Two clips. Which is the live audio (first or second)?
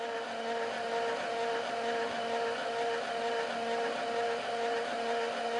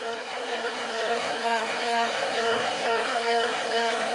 first